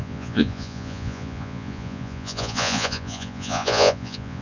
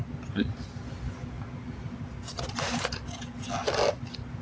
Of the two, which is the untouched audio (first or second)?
second